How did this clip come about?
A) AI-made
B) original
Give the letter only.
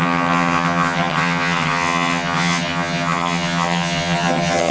A